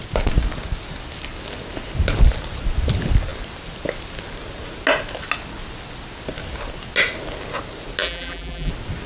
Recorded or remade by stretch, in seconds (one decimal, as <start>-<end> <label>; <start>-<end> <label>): 0.0-8.0 recorded; 8.0-8.7 remade; 8.7-9.1 recorded